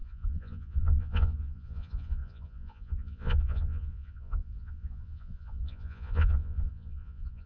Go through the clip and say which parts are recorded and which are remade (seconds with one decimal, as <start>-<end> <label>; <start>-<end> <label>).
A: 0.0-7.5 remade